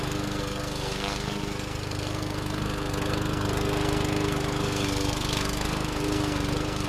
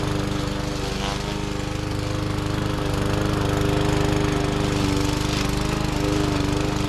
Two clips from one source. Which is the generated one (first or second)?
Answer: first